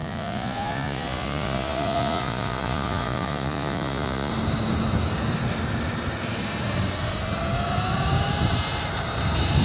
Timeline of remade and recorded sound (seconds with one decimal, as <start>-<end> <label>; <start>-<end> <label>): 0.0-4.3 remade; 4.3-9.6 recorded